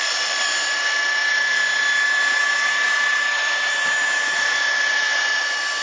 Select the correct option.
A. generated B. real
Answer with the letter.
B